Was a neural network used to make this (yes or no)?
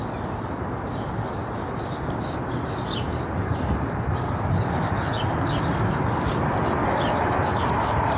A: no